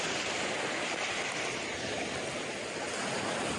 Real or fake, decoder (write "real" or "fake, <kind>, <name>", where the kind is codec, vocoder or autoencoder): real